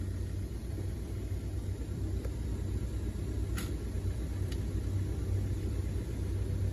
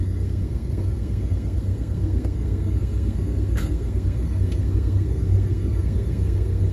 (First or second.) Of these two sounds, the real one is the first